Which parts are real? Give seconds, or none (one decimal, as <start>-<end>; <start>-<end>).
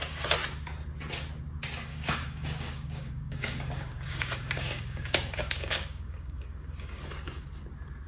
0.0-1.9; 6.4-8.1